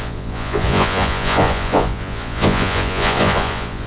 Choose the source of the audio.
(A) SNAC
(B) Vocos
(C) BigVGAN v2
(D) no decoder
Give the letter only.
B